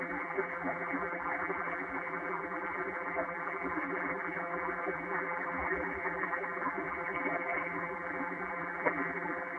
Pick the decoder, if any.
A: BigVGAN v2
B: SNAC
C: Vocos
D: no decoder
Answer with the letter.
A